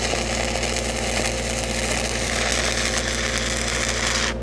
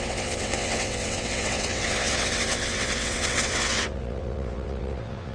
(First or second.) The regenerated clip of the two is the second